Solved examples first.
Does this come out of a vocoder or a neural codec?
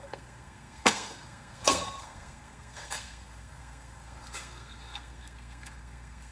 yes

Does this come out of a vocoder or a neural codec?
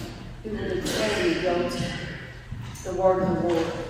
no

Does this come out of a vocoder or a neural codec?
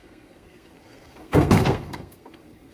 yes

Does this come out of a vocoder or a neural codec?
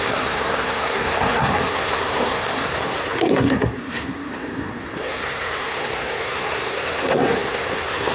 yes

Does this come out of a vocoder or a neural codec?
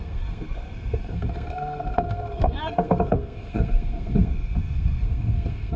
yes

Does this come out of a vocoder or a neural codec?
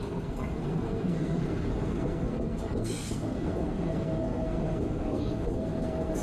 yes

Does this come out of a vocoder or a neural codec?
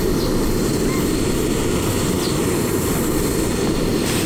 no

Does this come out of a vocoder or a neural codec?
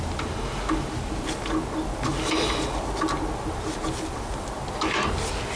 no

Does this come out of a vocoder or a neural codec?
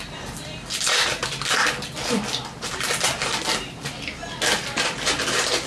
no